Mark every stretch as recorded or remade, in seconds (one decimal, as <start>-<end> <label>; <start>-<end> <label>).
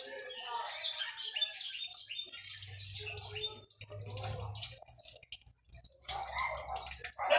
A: 0.0-7.4 recorded